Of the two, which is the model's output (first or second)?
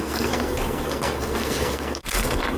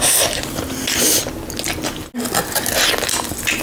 first